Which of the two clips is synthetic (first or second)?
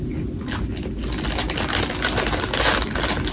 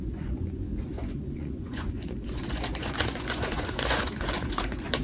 second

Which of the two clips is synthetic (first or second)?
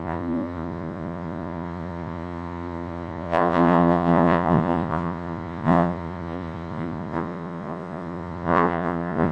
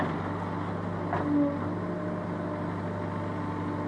first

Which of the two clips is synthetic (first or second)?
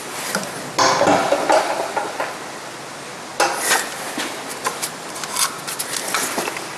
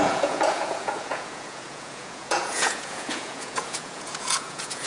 second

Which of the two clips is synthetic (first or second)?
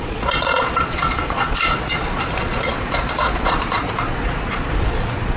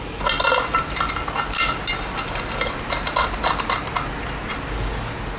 first